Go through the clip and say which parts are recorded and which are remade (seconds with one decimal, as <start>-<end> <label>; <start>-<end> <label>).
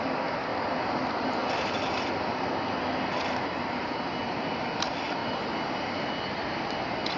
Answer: 0.0-7.2 recorded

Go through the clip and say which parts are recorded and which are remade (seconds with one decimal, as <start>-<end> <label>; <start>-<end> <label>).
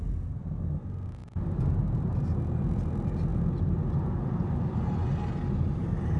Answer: 0.0-6.2 recorded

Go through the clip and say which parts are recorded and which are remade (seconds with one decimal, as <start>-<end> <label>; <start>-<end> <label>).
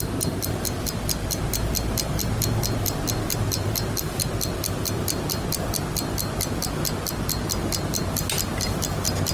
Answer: 0.0-9.3 recorded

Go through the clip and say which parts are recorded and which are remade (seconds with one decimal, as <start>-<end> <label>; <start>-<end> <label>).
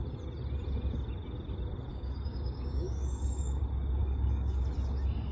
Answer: 0.0-1.9 recorded; 1.9-3.6 remade; 3.6-4.0 recorded; 4.0-4.6 remade; 4.6-5.3 recorded